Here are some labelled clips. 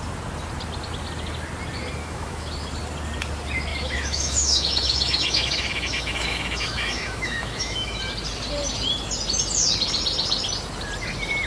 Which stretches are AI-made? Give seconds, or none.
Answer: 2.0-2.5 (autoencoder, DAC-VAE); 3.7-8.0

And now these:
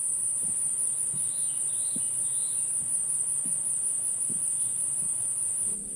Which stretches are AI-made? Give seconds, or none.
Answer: 0.7-1.6 (autoencoder, DAC-VAE); 2.8-5.4